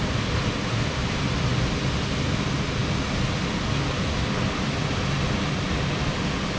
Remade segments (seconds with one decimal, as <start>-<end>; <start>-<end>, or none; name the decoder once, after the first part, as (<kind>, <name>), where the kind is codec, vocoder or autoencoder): none